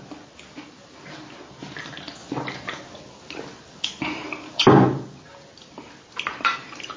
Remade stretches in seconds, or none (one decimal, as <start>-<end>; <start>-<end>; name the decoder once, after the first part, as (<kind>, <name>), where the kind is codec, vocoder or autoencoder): 0.0-2.2 (vocoder, BigVGAN v2); 4.6-5.5; 6.3-7.0